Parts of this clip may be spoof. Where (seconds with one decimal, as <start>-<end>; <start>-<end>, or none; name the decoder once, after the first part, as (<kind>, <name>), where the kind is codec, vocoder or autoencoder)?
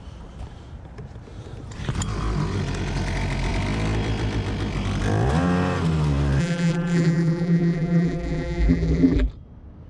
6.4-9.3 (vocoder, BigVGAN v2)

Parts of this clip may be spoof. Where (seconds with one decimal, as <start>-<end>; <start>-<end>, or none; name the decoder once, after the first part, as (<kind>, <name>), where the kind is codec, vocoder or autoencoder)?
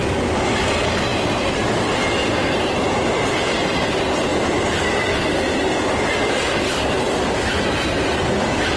1.1-1.6 (vocoder, BigVGAN v2); 2.2-2.8; 4.3-6.9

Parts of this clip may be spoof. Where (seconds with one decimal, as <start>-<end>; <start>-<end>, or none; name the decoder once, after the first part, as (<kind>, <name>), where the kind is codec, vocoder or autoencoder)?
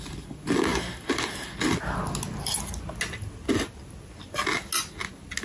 none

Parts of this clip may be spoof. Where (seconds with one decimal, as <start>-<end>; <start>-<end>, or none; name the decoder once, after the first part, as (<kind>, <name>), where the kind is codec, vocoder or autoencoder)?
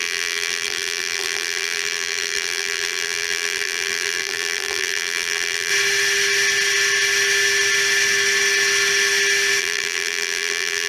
0.0-5.7 (vocoder, BigVGAN v2); 9.6-10.9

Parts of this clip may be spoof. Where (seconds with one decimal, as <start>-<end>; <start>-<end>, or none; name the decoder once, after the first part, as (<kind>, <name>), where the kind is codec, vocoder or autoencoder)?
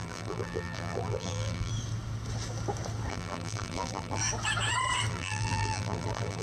0.0-1.7 (vocoder, BigVGAN v2); 3.1-4.2; 5.1-6.4